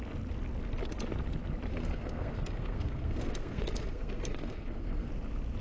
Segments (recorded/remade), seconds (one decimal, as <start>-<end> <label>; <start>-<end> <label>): 0.0-1.7 recorded; 1.7-5.1 remade; 5.1-5.6 recorded